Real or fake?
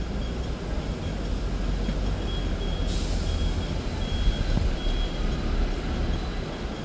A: real